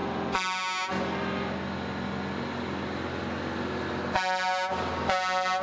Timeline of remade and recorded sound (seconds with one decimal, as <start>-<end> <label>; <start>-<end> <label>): 0.0-5.6 recorded